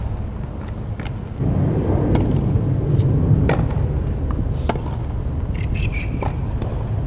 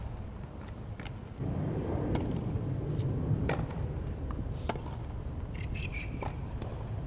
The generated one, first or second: second